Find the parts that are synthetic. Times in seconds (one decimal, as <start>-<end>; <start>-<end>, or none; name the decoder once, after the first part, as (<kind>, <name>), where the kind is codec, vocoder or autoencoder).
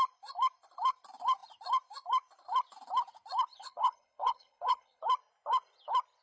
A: 3.5-5.0 (codec, HILCodec)